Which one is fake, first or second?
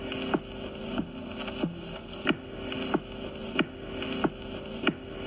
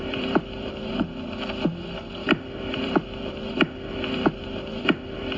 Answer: second